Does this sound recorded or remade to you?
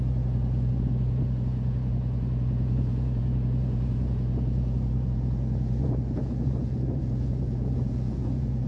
remade